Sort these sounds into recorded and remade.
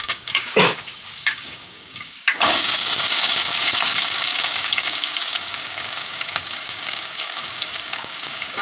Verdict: remade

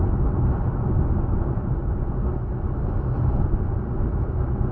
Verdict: recorded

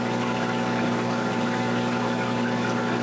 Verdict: remade